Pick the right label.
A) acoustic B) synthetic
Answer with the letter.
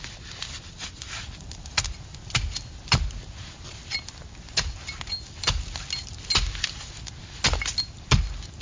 A